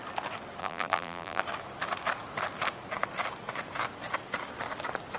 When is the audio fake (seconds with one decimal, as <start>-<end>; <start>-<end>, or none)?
0.6-1.4